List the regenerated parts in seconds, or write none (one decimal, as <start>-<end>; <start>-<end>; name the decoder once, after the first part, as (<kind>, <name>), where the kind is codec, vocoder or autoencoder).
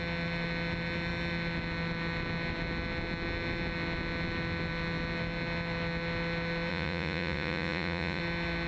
6.7-8.2 (vocoder, Vocos)